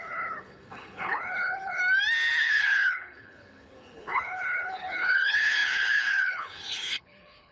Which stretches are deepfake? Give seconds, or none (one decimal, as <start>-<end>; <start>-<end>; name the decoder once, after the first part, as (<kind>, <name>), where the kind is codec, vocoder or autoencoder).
0.0-1.8 (codec, HILCodec); 2.4-7.5